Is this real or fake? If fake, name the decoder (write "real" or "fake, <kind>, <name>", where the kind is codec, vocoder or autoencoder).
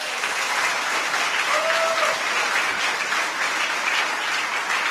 real